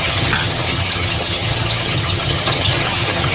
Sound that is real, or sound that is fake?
fake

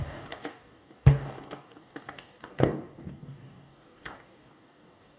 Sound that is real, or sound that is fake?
fake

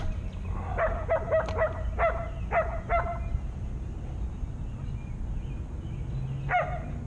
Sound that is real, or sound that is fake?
real